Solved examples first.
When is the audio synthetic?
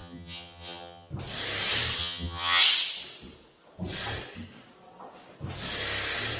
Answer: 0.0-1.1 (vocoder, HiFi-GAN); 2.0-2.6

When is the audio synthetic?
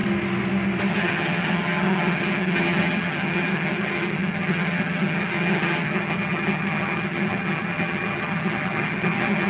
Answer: 0.9-9.5 (vocoder, HiFi-GAN)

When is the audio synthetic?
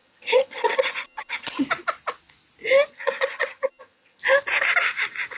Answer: 0.0-1.6 (vocoder, HiFi-GAN); 2.9-4.2